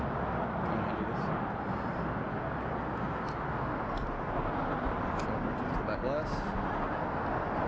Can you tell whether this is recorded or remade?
recorded